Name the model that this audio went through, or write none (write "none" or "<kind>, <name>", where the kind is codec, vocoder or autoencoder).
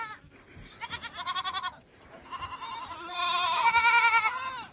none